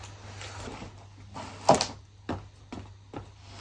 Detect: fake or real real